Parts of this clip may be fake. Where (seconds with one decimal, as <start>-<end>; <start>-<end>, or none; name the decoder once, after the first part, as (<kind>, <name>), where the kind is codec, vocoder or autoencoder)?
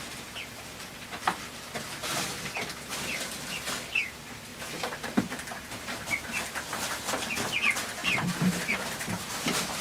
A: 4.5-5.2 (vocoder, BigVGAN v2); 8.0-9.2